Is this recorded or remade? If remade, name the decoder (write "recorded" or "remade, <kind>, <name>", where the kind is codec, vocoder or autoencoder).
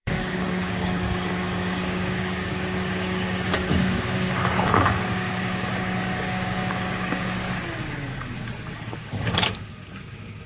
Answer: remade, codec, DAC